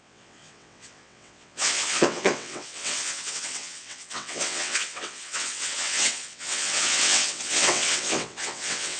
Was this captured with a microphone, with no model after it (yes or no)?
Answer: no